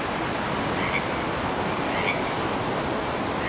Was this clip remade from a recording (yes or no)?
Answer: no